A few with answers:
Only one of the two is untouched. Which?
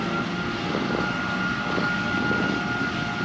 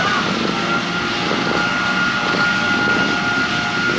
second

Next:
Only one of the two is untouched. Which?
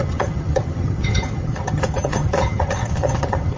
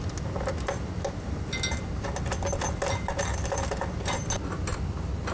second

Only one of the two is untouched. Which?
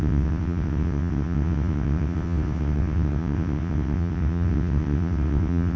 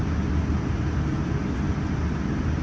second